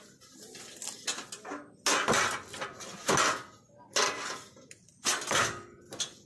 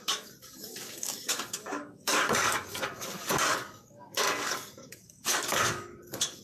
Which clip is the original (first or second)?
first